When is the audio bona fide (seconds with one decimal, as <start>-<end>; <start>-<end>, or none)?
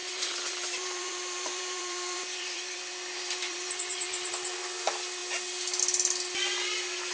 4.3-7.1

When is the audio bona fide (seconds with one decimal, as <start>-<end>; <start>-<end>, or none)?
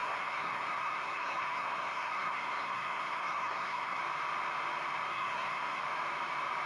4.0-5.1; 5.8-6.7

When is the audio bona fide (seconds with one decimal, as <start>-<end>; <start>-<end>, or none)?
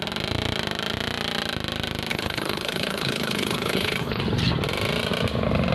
0.0-2.1; 4.2-5.7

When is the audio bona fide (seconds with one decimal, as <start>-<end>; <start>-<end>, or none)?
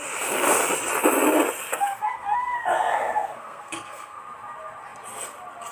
0.0-1.7; 4.2-5.7